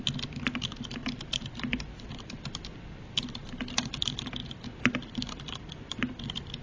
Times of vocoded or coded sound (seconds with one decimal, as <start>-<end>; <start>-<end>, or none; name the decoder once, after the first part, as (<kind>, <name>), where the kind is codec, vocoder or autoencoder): 4.4-6.1 (vocoder, BigVGAN v2)